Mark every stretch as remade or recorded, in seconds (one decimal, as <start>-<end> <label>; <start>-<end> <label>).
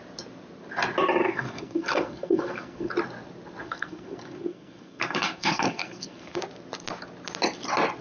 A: 0.0-1.2 recorded; 1.2-2.9 remade; 2.9-3.6 recorded; 3.6-6.4 remade; 6.4-8.0 recorded